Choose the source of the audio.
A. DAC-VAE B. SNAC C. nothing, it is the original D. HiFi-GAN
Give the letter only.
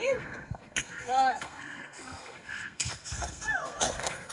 B